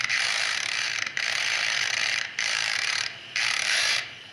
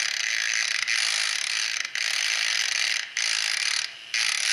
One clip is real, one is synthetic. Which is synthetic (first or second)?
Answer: first